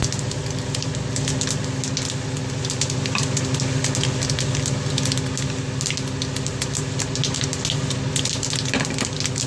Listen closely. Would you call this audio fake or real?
real